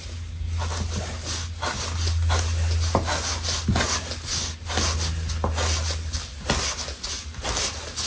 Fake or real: real